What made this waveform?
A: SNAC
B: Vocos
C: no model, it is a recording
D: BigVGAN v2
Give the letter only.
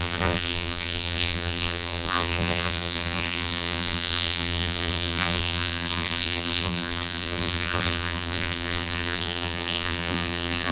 D